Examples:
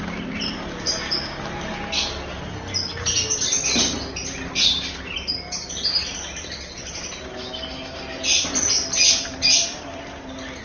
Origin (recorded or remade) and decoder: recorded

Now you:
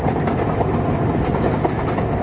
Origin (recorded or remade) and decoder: recorded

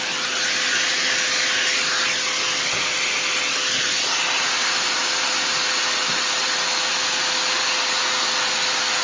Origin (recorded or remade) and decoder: recorded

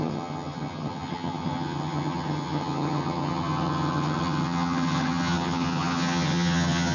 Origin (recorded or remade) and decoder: remade, vocoder, HiFi-GAN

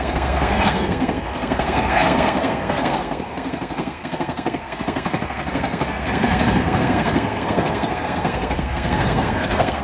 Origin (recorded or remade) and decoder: remade, codec, SNAC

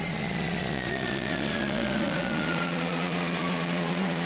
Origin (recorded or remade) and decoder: remade, vocoder, Vocos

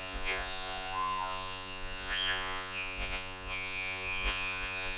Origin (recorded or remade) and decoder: remade, vocoder, Vocos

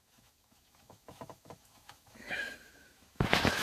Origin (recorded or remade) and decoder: remade, autoencoder, DAC-VAE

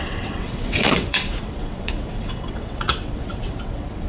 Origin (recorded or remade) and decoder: remade, vocoder, WaveNeXt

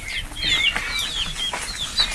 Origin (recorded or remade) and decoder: recorded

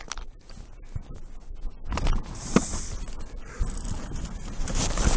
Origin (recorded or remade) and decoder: recorded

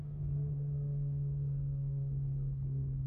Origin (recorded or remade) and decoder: remade, codec, SNAC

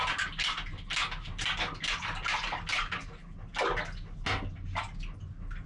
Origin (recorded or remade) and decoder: recorded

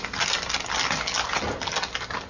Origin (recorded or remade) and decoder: recorded